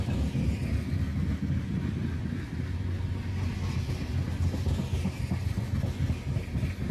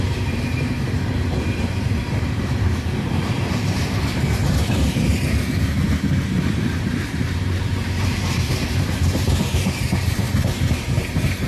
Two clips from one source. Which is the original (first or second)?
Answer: first